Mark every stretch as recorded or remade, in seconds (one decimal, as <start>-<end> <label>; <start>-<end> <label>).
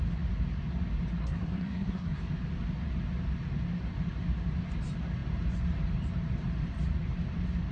0.0-1.2 recorded; 1.2-2.2 remade; 2.2-7.7 recorded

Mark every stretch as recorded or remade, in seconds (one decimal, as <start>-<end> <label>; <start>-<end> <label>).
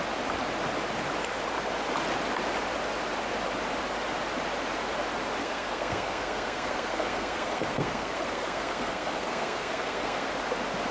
0.0-5.4 recorded; 5.4-10.3 remade; 10.3-10.9 recorded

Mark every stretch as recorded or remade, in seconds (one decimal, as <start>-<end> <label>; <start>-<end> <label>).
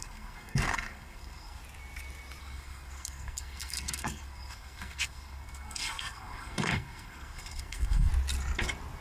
0.0-1.6 remade; 1.6-2.4 recorded; 2.4-8.1 remade; 8.1-9.0 recorded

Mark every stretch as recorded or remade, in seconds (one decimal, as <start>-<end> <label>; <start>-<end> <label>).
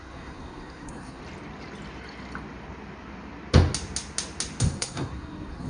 0.0-1.2 remade; 1.2-4.6 recorded; 4.6-5.7 remade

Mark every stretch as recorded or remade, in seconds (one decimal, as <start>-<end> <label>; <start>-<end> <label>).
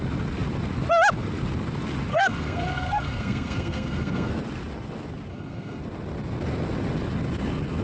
0.0-2.1 recorded; 2.1-4.3 remade; 4.3-5.3 recorded; 5.3-5.8 remade; 5.8-7.8 recorded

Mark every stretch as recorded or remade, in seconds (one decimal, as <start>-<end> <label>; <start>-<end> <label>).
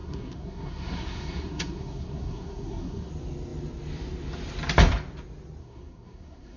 0.0-3.1 remade; 3.1-5.6 recorded; 5.6-6.6 remade